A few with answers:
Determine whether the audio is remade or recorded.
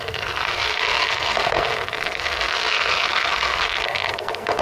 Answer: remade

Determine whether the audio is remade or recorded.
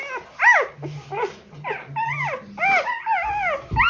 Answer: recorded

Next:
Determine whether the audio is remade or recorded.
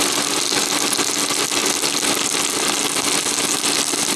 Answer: recorded